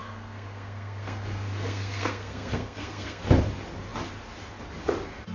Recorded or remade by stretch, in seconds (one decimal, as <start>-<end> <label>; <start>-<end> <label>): 0.0-3.2 remade; 3.2-5.3 recorded